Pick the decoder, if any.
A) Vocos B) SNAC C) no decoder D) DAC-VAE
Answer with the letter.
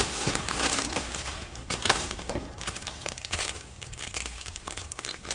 B